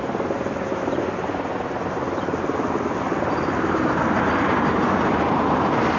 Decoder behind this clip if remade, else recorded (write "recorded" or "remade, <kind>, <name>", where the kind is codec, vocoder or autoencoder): recorded